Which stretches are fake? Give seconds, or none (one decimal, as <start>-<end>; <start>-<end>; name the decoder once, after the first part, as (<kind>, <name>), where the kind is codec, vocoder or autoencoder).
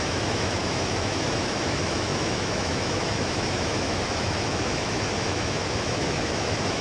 0.0-6.8 (autoencoder, DAC-VAE)